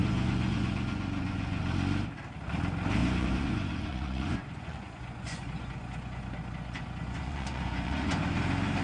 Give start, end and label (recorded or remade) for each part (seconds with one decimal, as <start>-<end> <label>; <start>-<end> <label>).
0.0-1.6 remade; 1.6-3.0 recorded; 3.0-8.2 remade; 8.2-8.8 recorded